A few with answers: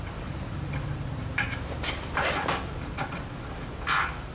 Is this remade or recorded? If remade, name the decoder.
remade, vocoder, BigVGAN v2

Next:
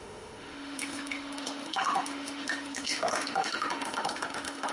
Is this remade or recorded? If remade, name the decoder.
remade, autoencoder, DAC-VAE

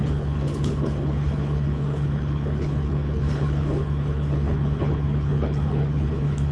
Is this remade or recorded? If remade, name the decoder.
remade, codec, HILCodec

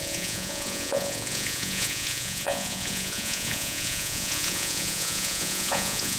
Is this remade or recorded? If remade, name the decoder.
remade, vocoder, Vocos